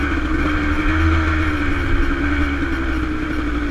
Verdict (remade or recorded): recorded